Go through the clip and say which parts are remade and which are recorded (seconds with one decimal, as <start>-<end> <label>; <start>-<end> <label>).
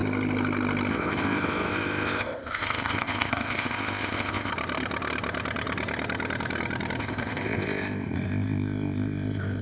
0.0-0.9 recorded; 0.9-4.5 remade; 4.5-7.0 recorded; 7.0-9.6 remade